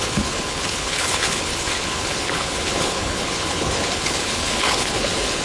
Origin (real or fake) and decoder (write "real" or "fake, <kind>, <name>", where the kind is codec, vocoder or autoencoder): fake, codec, HILCodec